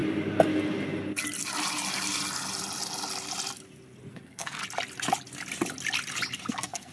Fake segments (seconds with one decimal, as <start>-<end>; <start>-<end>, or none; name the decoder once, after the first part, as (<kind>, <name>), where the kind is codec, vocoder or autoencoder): 4.1-4.6 (codec, SNAC); 6.5-6.9